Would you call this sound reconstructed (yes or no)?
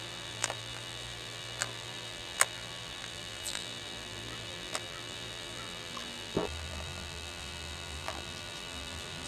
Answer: yes